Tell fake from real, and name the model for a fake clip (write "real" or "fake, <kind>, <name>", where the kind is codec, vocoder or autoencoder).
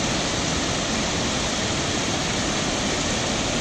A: fake, vocoder, BigVGAN v2